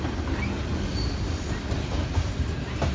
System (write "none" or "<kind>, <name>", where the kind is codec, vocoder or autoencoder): none